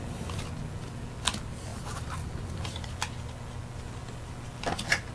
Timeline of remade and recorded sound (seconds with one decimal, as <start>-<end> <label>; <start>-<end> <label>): 0.0-1.7 recorded; 1.7-2.9 remade; 2.9-5.1 recorded